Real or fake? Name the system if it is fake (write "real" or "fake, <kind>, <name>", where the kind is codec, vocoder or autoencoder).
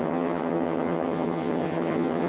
fake, vocoder, HiFi-GAN